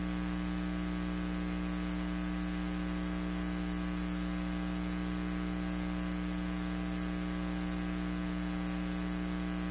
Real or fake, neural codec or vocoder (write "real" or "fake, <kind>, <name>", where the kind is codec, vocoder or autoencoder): real